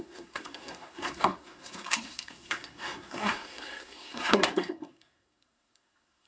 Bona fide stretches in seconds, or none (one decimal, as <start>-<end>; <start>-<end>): none